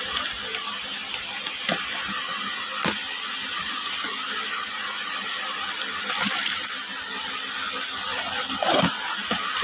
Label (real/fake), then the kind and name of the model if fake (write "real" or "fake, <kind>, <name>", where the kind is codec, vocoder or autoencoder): real